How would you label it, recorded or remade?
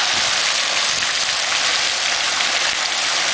recorded